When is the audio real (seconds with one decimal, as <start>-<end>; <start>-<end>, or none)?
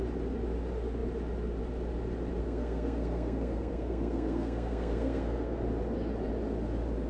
0.0-2.4; 5.6-7.1